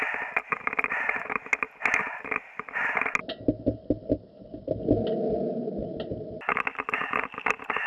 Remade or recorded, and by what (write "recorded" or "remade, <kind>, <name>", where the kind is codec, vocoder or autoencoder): recorded